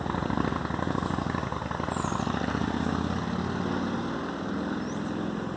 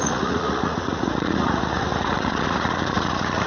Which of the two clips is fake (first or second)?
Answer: second